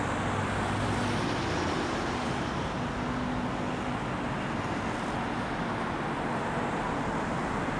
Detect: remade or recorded recorded